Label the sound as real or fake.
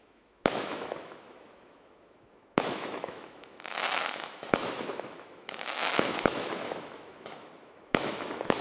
fake